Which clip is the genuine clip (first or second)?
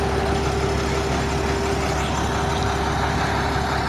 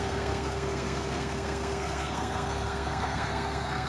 first